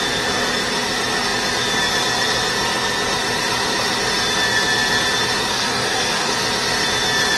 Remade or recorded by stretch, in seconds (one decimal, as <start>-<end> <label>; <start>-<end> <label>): 0.0-5.5 recorded; 5.5-6.3 remade; 6.3-7.4 recorded